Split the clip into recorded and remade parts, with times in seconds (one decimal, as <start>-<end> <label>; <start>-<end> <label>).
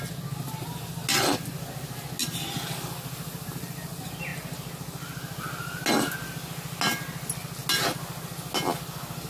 0.0-9.3 recorded